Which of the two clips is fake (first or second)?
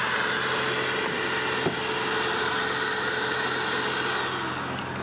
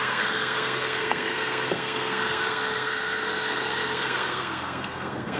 second